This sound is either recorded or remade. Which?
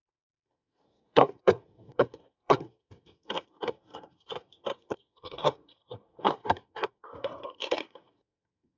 remade